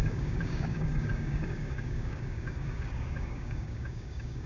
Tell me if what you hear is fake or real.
fake